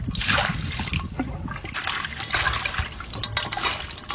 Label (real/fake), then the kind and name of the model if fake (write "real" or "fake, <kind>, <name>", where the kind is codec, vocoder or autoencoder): real